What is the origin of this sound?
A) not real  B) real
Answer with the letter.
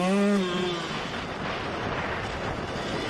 B